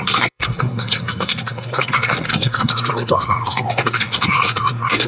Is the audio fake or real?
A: fake